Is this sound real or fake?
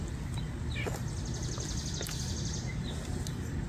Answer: real